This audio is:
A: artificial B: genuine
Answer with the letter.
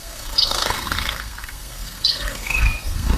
A